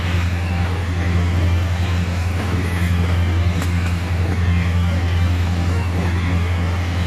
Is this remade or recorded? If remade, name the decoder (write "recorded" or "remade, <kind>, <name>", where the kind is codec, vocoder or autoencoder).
remade, codec, DAC